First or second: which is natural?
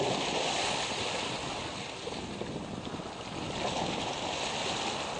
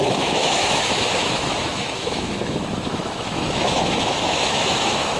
first